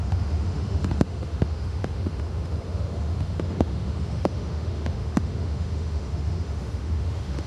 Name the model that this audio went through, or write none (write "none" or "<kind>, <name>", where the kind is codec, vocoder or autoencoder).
autoencoder, DAC-VAE